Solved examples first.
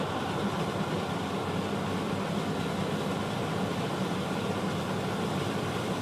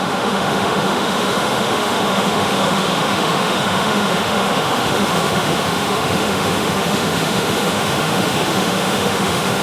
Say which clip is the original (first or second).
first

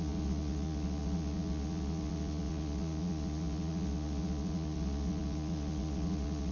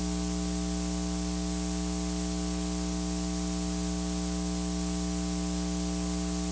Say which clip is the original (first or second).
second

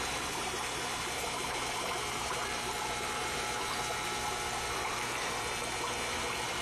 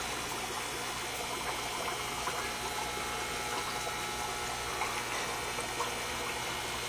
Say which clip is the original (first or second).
second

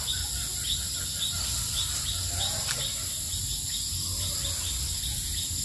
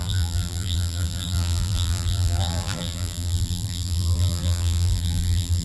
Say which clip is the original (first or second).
first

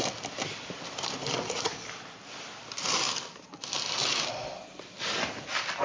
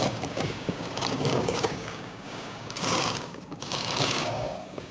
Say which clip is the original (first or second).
first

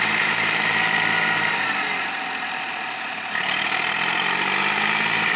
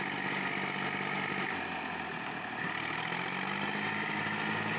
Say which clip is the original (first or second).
second